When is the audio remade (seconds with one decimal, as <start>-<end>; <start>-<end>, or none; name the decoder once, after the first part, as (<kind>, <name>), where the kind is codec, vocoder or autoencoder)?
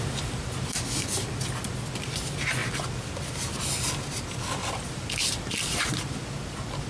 none